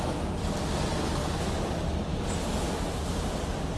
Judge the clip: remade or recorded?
recorded